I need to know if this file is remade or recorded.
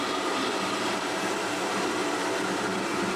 recorded